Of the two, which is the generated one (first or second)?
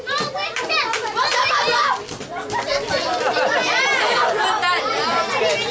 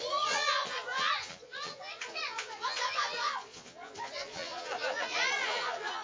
second